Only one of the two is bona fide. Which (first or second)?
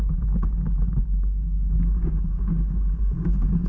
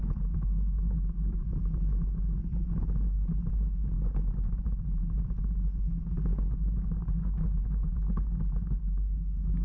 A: second